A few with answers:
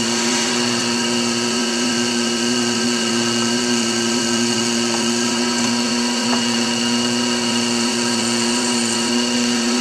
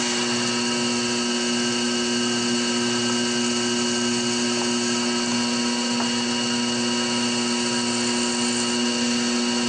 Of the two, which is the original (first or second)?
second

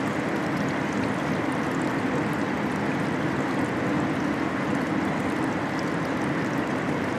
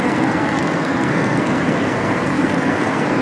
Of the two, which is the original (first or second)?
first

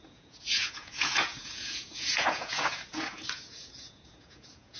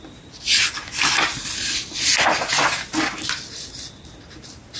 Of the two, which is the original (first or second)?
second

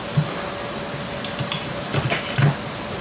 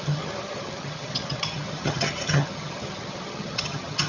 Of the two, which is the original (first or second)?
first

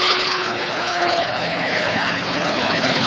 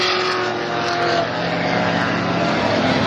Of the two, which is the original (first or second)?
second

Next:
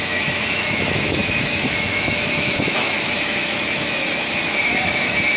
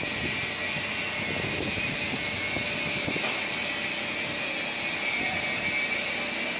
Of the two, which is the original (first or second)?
second